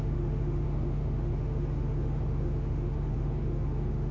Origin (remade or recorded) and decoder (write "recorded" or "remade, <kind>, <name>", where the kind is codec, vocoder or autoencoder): remade, autoencoder, DAC-VAE